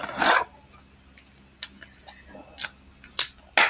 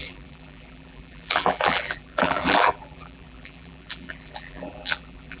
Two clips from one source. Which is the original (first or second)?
first